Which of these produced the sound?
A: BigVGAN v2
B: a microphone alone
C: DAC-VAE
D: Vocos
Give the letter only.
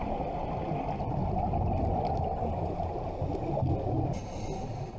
B